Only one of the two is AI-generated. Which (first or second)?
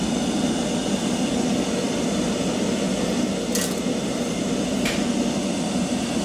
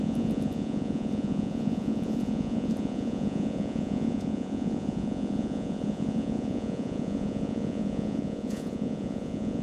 second